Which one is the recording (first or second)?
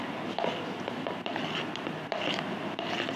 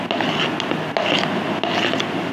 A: second